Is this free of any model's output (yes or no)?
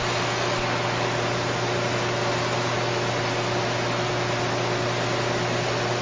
yes